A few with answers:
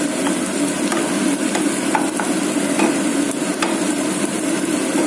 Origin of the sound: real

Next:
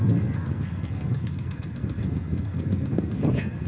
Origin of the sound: fake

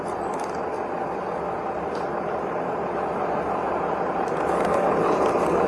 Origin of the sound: real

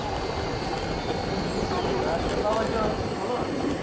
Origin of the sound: real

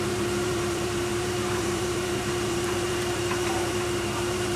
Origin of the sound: fake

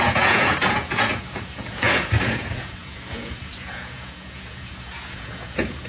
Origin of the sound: fake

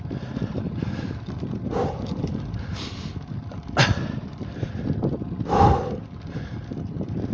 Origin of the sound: fake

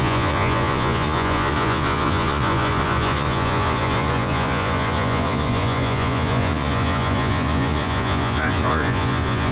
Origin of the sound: fake